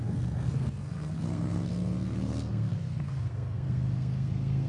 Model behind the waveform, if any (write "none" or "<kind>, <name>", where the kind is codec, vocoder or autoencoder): codec, SNAC